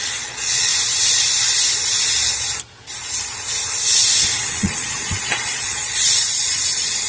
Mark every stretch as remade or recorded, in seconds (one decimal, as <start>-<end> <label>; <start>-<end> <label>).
0.0-0.7 remade; 0.7-4.5 recorded; 4.5-7.1 remade